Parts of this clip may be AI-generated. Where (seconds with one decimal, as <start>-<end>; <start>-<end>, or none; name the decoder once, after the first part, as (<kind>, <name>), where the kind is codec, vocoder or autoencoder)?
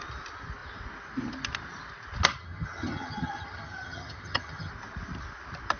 2.4-4.7 (vocoder, HiFi-GAN)